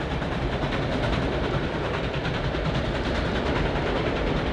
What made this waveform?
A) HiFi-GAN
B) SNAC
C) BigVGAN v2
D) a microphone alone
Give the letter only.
C